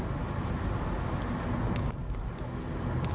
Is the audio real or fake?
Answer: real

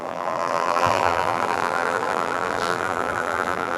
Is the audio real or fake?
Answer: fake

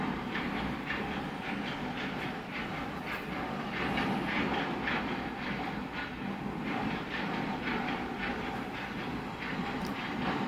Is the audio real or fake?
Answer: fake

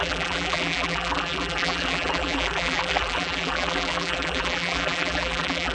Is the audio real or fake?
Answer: fake